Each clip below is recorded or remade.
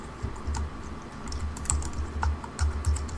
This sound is recorded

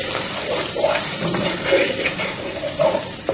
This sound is remade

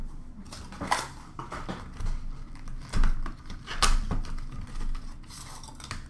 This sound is recorded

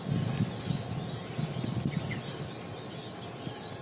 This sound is recorded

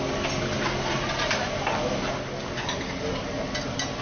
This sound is recorded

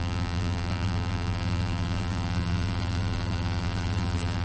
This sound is remade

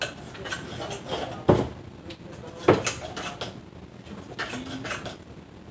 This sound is recorded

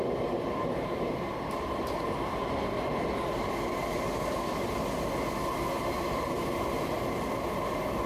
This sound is remade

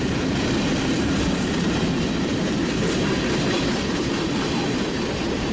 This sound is remade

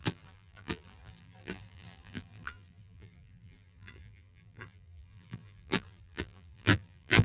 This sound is remade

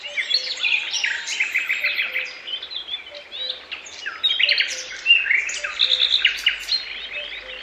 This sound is recorded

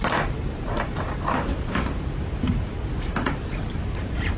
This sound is remade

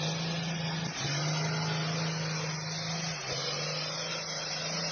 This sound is recorded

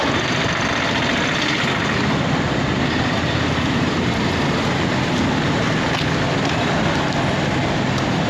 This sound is recorded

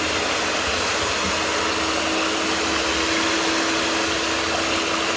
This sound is recorded